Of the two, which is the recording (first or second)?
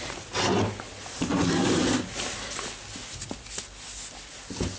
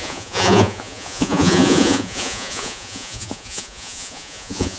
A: first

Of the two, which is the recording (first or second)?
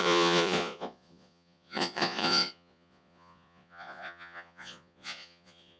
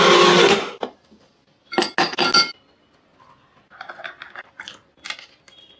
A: second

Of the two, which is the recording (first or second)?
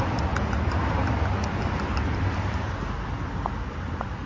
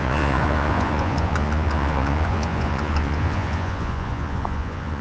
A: first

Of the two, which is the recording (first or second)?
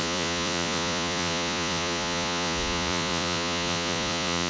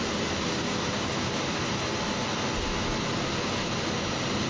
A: second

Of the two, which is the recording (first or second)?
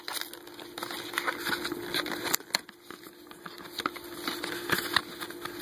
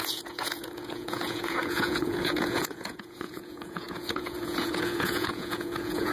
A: first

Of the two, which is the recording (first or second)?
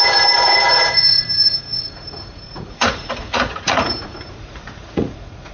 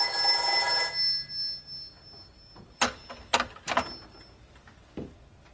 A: second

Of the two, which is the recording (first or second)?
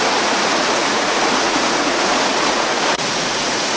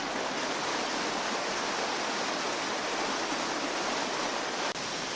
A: second